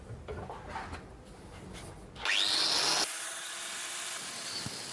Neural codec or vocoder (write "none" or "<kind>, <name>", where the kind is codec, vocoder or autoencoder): none